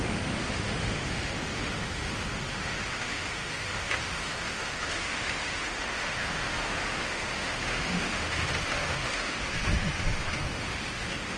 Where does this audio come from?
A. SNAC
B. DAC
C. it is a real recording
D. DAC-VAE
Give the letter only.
D